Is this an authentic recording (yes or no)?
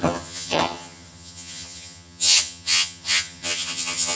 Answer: no